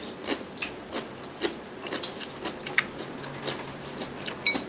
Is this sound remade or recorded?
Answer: recorded